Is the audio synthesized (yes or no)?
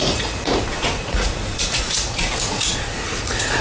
yes